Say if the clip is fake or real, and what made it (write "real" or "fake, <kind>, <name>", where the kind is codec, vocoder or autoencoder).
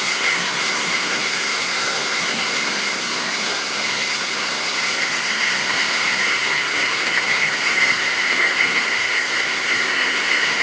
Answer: fake, codec, SNAC